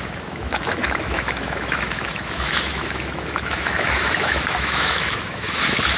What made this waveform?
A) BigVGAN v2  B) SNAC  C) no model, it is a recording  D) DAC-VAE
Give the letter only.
D